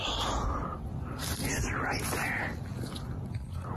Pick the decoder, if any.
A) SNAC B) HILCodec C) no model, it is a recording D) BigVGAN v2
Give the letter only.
C